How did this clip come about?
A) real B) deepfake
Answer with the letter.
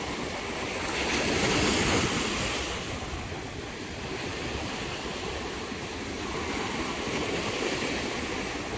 A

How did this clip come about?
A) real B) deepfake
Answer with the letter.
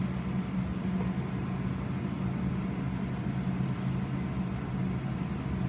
A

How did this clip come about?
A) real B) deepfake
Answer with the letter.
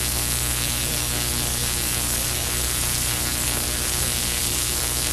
B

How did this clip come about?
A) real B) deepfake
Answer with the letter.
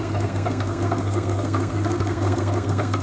B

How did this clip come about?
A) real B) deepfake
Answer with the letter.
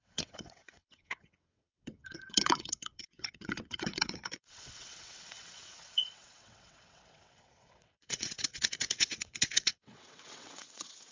B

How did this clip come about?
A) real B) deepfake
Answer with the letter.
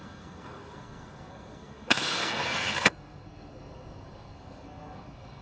B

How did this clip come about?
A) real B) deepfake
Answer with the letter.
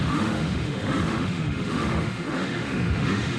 B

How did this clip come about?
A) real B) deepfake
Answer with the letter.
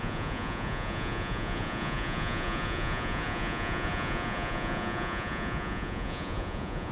B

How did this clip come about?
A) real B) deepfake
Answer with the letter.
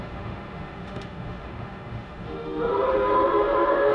B